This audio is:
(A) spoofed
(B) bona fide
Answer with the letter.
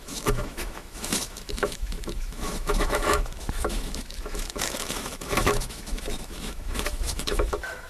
A